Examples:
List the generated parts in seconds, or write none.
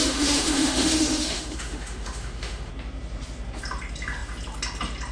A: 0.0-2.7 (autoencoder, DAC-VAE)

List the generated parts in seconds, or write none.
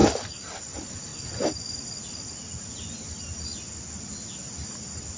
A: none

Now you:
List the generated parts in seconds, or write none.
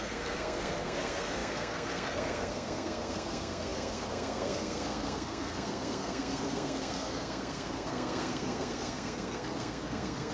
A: 0.0-10.3 (codec, SNAC)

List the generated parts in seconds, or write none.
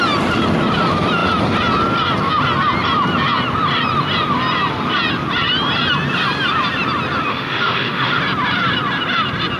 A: 7.3-8.2 (autoencoder, DAC-VAE)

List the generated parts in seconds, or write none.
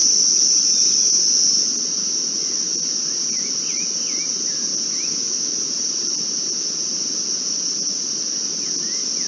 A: 5.1-5.6 (autoencoder, DAC-VAE)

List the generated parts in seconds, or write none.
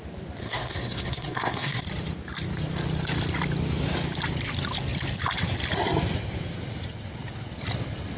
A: 0.4-1.8 (codec, SNAC)